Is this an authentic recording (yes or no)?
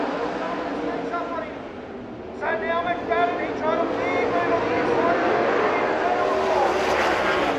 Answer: yes